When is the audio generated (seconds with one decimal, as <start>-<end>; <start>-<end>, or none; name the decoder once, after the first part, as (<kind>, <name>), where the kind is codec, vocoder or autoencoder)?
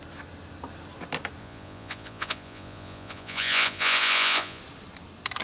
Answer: 1.4-4.6 (vocoder, Vocos)